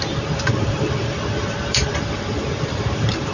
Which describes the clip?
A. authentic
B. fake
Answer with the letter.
B